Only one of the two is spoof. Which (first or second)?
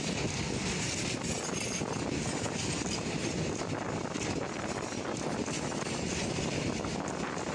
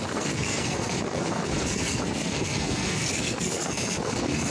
second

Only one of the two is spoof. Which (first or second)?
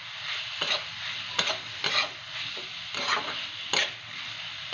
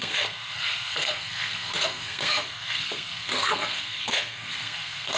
second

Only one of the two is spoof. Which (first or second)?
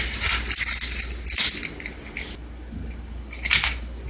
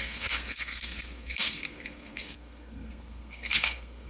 second